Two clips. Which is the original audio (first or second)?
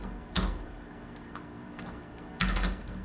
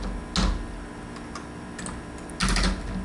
second